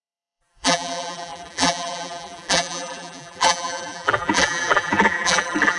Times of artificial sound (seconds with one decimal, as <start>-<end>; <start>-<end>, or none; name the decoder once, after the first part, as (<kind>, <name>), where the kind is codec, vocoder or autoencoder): 0.0-5.8 (vocoder, BigVGAN v2)